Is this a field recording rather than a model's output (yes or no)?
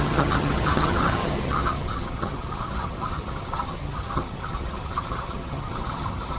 no